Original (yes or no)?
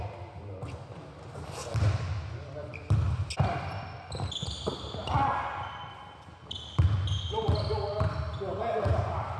yes